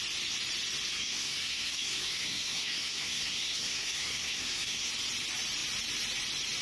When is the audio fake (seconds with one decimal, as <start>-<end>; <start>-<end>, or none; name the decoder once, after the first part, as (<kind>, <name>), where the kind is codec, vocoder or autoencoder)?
0.9-4.9 (codec, SNAC)